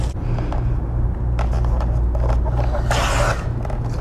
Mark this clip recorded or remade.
recorded